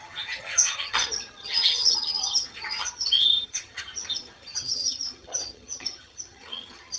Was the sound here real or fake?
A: fake